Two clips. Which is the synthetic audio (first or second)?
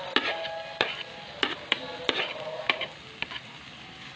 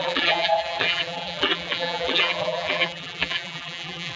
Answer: second